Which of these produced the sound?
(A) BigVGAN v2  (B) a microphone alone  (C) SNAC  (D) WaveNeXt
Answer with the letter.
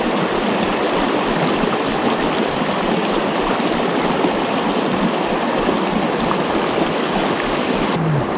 B